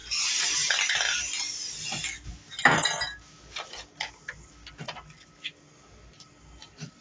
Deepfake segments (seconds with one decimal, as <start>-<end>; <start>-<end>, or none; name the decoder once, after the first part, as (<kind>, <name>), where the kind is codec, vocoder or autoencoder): none